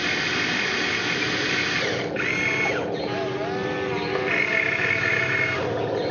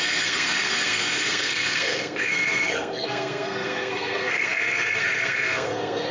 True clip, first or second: first